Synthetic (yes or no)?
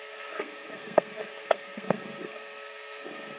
yes